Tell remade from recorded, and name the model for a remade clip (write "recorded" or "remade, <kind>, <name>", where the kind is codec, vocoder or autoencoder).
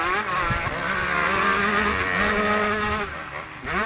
recorded